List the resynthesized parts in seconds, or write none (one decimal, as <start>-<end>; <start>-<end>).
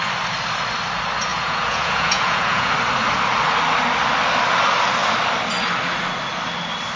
1.3-2.7